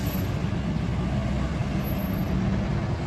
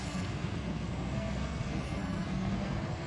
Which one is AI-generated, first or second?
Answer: second